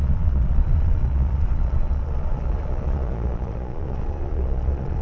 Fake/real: fake